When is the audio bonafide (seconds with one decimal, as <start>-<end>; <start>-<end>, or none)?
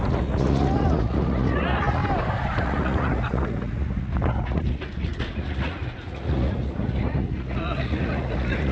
2.0-2.6